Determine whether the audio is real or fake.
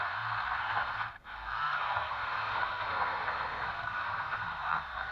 fake